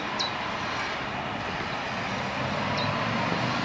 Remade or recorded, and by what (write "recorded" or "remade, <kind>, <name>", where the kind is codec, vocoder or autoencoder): recorded